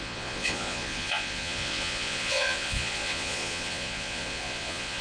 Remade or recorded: remade